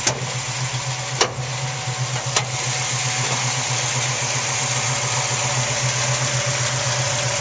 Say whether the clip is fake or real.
real